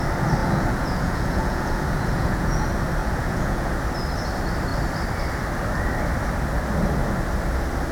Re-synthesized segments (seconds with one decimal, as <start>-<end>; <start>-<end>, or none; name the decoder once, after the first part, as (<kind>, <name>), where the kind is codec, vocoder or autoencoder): 0.4-2.6 (vocoder, Vocos); 3.0-3.7